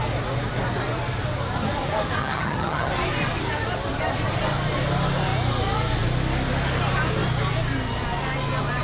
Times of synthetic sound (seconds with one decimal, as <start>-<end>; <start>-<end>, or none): 2.2-2.9